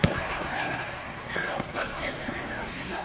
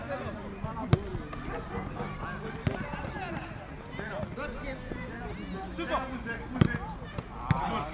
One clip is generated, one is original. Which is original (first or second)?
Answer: second